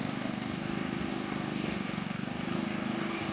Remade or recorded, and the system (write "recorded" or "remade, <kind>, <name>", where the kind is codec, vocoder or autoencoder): remade, codec, DAC